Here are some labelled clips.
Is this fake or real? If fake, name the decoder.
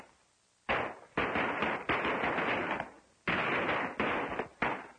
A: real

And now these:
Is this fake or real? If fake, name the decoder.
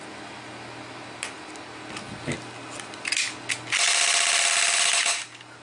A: real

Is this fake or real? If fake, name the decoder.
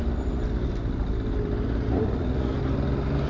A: real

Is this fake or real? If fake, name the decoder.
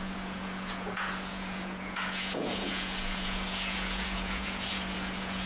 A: fake, vocoder, Vocos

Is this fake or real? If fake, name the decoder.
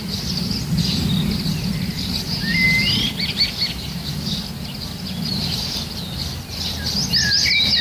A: real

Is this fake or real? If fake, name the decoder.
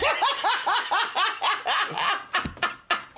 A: real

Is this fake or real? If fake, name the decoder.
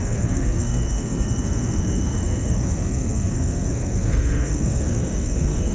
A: fake, codec, SNAC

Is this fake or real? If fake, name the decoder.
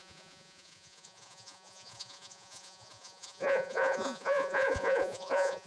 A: fake, vocoder, Vocos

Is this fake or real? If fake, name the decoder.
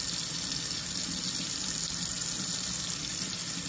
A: real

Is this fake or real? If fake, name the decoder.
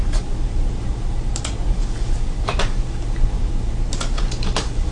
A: fake, vocoder, BigVGAN v2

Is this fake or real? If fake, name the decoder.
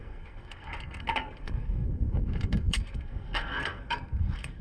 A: fake, codec, SNAC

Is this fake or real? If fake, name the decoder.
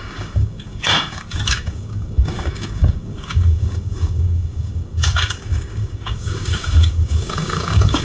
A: fake, codec, DAC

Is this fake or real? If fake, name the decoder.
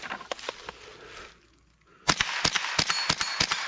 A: real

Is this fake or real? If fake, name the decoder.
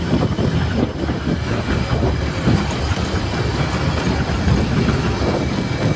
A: real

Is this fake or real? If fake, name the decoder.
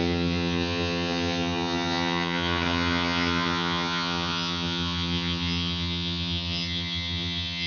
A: fake, vocoder, HiFi-GAN